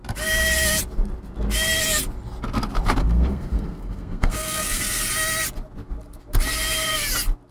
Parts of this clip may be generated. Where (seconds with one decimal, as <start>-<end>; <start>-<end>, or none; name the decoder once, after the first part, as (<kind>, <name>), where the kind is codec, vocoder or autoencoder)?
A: 3.0-5.1 (codec, SNAC)